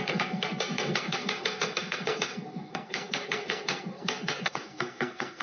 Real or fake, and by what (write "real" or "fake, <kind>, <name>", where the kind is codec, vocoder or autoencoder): fake, codec, SNAC